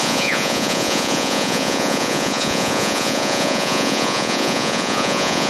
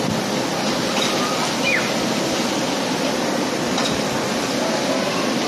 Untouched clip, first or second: second